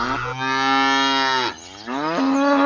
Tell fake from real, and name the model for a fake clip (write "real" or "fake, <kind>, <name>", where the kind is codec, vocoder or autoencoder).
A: real